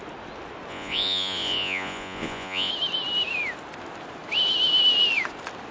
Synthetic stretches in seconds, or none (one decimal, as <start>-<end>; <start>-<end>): 0.7-2.7